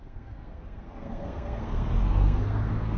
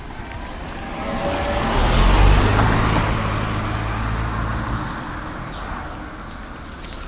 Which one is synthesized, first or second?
first